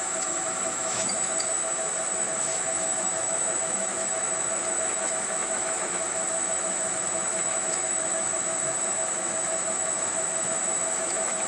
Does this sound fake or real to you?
fake